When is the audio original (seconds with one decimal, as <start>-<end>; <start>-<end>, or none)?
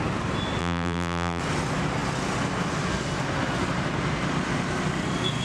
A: 0.0-0.6; 1.4-5.4